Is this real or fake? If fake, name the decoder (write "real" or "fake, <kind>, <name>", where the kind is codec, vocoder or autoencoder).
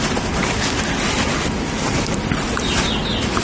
real